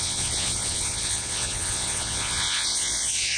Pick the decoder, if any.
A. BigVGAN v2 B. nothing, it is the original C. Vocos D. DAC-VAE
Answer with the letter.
C